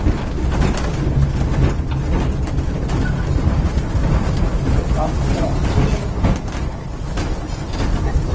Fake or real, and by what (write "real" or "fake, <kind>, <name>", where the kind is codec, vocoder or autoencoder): real